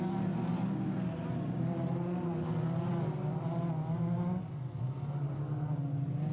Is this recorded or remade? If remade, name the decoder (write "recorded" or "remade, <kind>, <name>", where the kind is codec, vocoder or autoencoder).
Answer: recorded